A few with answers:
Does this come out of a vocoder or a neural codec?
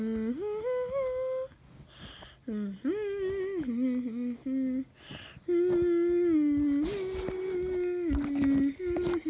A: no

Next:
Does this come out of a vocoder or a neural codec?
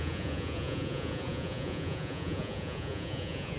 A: yes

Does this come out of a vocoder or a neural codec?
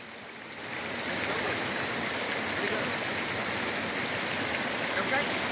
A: no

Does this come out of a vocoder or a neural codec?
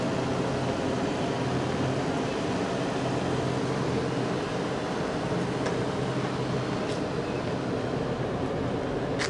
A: no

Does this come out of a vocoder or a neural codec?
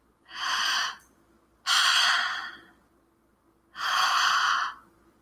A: no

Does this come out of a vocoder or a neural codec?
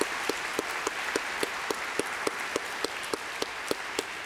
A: no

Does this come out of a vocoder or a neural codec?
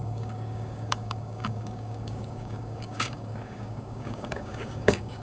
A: yes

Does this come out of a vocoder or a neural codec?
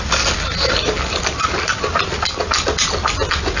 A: no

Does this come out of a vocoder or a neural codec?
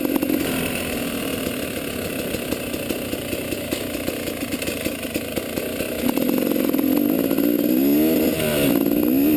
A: no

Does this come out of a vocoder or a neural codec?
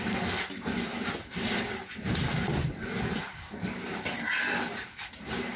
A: no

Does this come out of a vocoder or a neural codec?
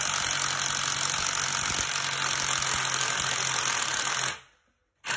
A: no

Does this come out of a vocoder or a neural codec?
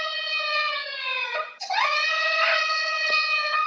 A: yes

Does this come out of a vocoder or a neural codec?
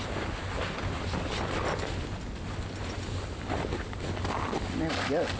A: no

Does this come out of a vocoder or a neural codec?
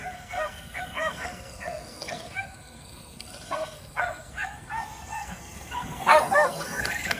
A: yes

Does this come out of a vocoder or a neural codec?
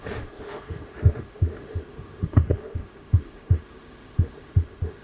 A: yes